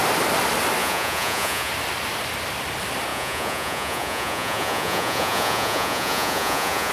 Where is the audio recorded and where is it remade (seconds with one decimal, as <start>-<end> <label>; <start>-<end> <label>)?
0.0-0.8 recorded; 0.8-1.7 remade; 1.7-3.1 recorded; 3.1-6.9 remade